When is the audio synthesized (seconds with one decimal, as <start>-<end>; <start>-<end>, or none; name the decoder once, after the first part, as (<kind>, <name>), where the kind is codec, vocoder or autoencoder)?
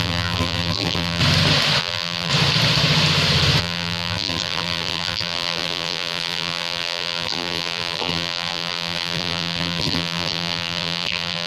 0.0-1.2 (vocoder, BigVGAN v2); 1.8-2.3; 3.6-11.5